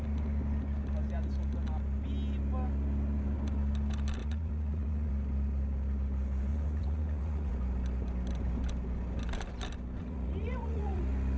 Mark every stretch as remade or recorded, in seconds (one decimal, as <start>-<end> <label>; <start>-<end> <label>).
0.0-4.2 recorded; 4.2-5.1 remade; 5.1-6.5 recorded; 6.5-7.5 remade; 7.5-10.0 recorded; 10.0-11.0 remade; 11.0-11.4 recorded